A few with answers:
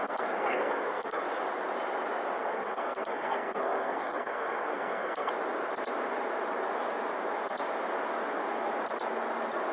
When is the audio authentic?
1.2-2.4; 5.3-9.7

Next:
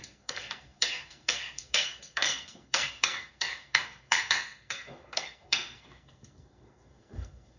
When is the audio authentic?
none

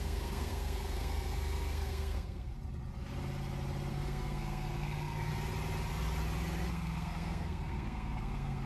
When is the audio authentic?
2.5-3.9; 5.3-6.7

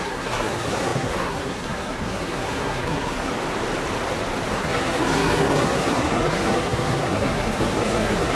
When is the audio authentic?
3.3-4.5

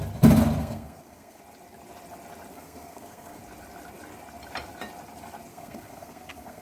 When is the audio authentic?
0.0-0.6; 1.4-2.5; 3.4-5.5